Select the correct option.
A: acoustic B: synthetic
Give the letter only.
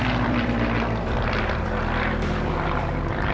B